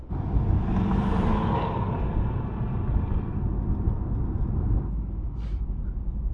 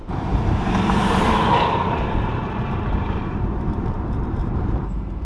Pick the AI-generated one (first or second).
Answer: second